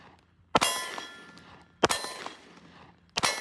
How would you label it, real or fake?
real